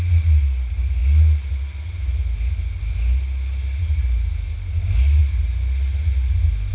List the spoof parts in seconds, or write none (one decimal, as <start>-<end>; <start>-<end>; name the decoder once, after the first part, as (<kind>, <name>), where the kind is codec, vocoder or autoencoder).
none